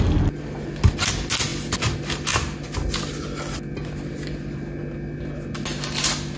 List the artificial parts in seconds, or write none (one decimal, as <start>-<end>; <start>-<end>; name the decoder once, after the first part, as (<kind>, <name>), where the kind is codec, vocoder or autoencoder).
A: none